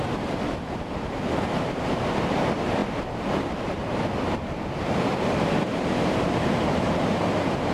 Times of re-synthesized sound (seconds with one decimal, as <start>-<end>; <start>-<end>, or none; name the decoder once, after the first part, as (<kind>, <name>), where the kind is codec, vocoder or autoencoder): 0.0-2.8 (vocoder, BigVGAN v2); 3.6-7.7